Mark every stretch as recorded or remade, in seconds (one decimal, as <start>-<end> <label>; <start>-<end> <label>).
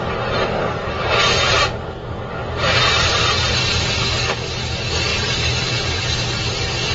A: 0.0-2.4 recorded; 2.4-3.7 remade; 3.7-5.1 recorded; 5.1-6.0 remade; 6.0-6.9 recorded